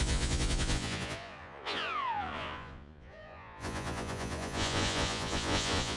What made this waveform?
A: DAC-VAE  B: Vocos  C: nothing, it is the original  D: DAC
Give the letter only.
B